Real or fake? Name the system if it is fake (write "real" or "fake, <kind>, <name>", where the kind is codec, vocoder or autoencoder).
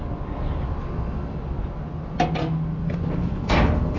real